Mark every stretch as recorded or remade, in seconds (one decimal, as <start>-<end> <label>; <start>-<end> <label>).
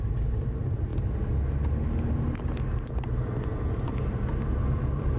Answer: 0.0-5.2 recorded